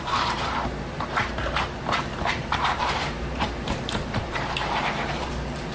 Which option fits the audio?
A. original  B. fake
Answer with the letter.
B